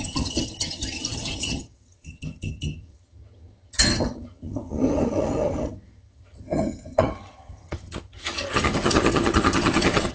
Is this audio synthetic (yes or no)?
yes